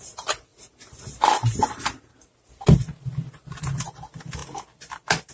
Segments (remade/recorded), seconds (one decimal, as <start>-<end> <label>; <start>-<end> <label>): 0.0-5.3 recorded